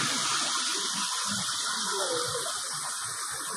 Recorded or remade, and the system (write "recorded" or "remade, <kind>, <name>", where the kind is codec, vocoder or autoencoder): recorded